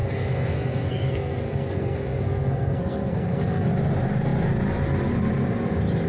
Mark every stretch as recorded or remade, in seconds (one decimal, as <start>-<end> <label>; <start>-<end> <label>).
0.0-3.7 remade; 3.7-6.1 recorded